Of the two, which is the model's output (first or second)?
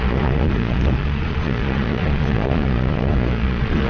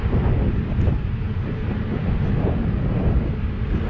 first